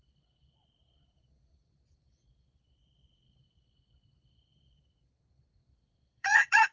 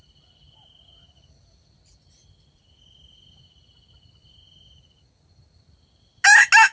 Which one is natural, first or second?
second